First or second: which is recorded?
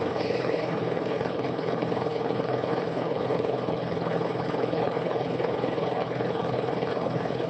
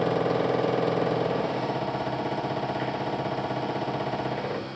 second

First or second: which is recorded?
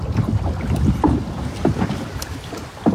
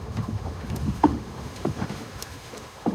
first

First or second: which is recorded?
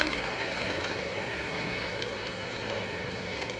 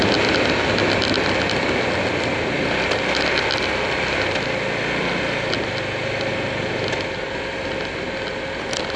second